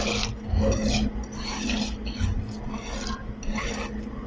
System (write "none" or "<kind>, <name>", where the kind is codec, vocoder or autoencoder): none